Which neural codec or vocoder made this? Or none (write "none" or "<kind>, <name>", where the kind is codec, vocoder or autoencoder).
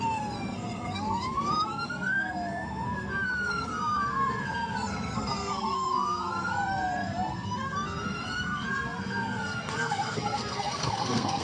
codec, SNAC